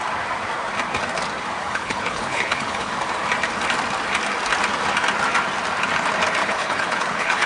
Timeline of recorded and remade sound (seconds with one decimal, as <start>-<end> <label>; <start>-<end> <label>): 0.0-1.6 recorded; 1.6-2.9 remade; 2.9-6.4 recorded; 6.4-7.5 remade